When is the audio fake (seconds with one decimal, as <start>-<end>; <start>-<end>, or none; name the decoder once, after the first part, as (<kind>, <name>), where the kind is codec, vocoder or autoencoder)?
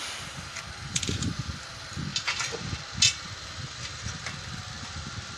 0.9-1.6 (vocoder, Vocos)